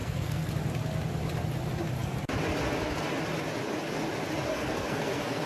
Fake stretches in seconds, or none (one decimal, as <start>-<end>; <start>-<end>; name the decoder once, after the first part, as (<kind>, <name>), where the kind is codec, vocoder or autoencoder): 0.0-0.5 (codec, SNAC); 4.5-5.5